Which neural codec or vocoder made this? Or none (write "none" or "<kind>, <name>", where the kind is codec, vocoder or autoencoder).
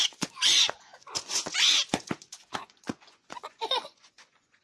vocoder, Vocos